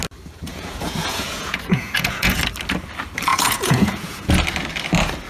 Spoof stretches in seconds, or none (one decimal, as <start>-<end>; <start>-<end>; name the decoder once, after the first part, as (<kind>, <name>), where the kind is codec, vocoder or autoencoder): 0.5-2.4 (vocoder, Vocos); 3.3-4.3

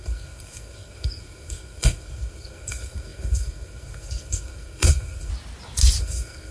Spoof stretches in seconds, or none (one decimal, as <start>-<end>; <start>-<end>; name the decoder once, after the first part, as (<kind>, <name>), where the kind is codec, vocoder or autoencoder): 0.0-5.3 (codec, SNAC); 6.0-6.5

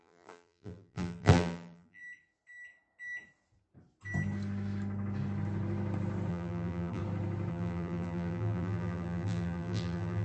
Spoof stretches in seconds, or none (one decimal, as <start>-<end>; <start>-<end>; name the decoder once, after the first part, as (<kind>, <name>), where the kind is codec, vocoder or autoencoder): 0.0-2.0 (vocoder, BigVGAN v2); 6.3-7.0; 7.5-10.2